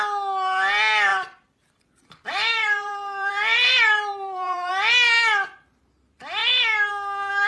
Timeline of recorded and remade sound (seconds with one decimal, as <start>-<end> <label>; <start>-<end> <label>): 0.0-1.1 recorded; 1.1-4.7 remade; 4.7-7.5 recorded